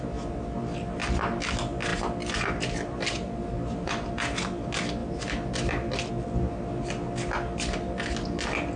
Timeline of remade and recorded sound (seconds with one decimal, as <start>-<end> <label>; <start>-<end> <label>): 0.0-3.5 recorded; 3.5-4.1 remade; 4.1-5.0 recorded; 5.0-6.1 remade; 6.1-8.8 recorded